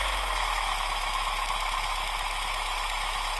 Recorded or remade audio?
remade